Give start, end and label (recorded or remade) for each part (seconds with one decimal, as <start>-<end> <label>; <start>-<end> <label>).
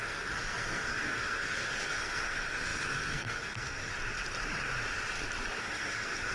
0.0-3.9 remade; 3.9-5.6 recorded; 5.6-6.3 remade